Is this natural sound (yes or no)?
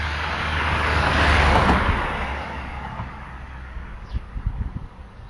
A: no